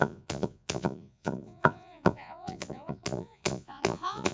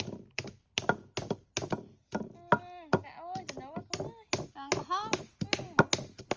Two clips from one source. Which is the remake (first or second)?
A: first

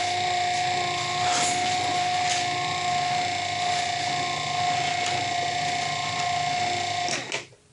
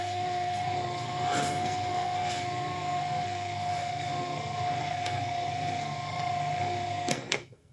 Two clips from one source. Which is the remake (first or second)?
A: second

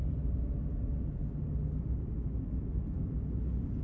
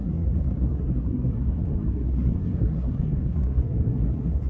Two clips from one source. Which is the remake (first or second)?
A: second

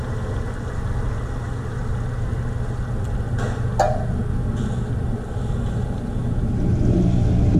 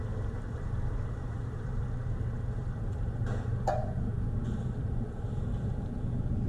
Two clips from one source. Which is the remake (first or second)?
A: second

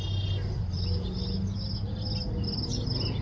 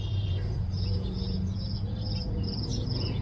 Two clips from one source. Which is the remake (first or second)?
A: second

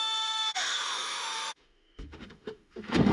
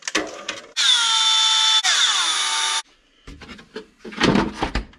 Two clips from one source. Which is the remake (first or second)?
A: first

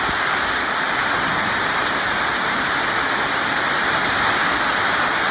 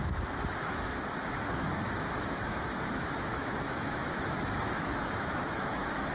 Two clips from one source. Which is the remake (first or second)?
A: second